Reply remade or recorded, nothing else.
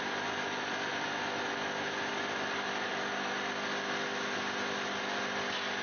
recorded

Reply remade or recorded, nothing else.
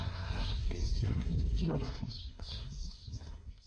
remade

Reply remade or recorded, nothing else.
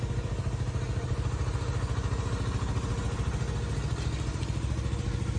recorded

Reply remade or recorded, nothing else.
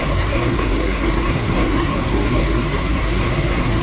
remade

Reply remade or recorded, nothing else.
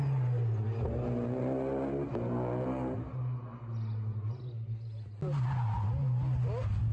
recorded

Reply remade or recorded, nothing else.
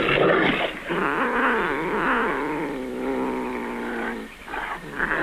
recorded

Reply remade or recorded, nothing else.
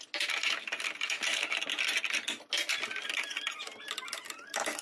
recorded